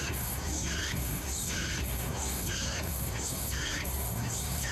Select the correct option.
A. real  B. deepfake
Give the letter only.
B